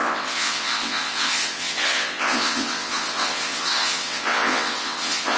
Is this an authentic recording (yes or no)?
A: no